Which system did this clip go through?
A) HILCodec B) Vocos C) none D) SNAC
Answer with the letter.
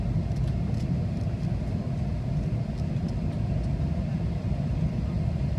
C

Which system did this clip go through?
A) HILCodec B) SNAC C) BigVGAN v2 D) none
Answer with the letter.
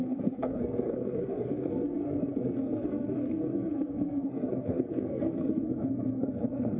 B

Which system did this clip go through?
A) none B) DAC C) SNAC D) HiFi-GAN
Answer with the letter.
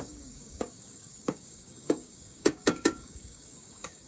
B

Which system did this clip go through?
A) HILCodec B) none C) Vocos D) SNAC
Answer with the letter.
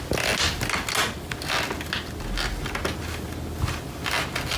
B